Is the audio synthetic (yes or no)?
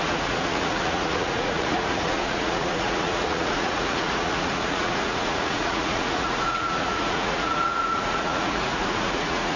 yes